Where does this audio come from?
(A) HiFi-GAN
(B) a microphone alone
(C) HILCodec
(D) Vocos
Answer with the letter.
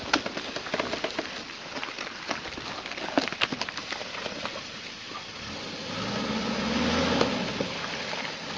B